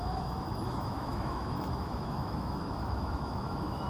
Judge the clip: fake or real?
fake